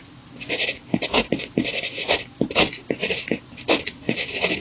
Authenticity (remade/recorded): recorded